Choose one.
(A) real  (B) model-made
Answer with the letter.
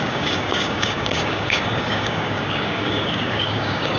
B